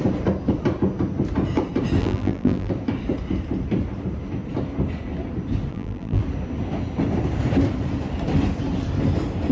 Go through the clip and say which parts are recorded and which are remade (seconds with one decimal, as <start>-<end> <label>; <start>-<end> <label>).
0.0-2.0 recorded; 2.0-2.7 remade; 2.7-5.7 recorded; 5.7-6.2 remade; 6.2-9.5 recorded

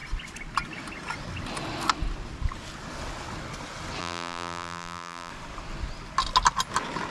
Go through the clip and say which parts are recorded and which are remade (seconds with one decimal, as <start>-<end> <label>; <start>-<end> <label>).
0.0-4.0 recorded; 4.0-5.3 remade; 5.3-7.1 recorded

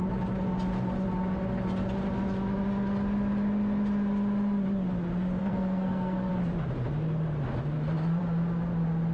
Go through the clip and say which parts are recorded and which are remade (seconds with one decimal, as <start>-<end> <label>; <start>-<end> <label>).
0.0-5.4 recorded; 5.4-6.3 remade; 6.3-9.1 recorded

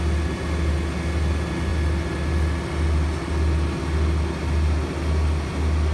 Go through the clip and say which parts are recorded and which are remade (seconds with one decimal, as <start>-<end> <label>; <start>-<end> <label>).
0.0-5.9 recorded

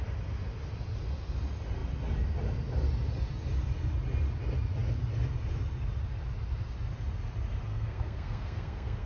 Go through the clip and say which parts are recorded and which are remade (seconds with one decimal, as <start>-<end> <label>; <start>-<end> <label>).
0.0-7.7 recorded; 7.7-9.1 remade

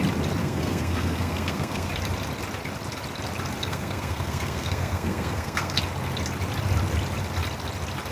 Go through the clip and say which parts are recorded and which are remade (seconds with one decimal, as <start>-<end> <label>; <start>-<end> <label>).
0.0-0.4 recorded; 0.4-1.9 remade; 1.9-3.6 recorded; 3.6-5.8 remade; 5.8-8.1 recorded